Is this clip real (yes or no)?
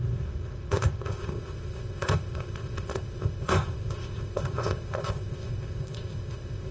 no